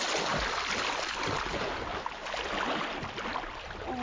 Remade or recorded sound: recorded